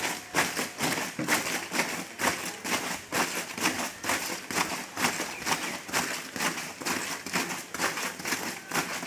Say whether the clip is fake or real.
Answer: real